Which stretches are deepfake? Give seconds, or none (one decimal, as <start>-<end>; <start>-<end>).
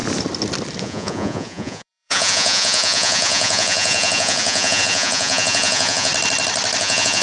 0.8-6.1; 6.8-7.2